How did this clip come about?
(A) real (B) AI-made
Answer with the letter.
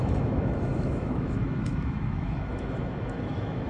B